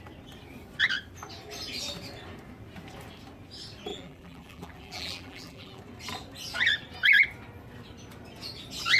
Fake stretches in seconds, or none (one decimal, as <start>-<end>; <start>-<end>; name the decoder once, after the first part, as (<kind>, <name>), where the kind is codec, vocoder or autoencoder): 3.9-5.8 (vocoder, BigVGAN v2)